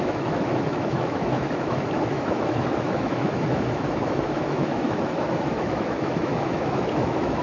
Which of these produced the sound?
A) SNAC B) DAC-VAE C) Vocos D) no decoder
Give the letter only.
B